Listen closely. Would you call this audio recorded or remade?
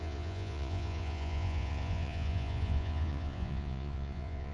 remade